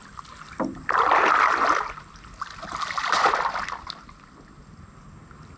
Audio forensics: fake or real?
real